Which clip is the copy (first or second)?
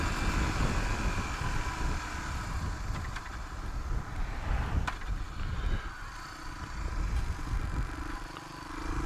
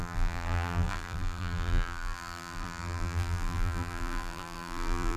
second